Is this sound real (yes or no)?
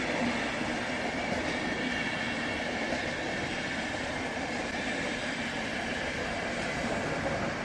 no